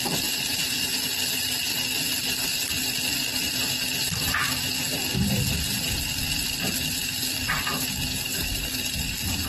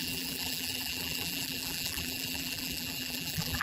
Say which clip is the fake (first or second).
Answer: second